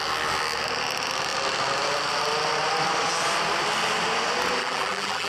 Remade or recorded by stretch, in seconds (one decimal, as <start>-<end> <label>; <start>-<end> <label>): 0.0-4.6 recorded; 4.6-5.3 remade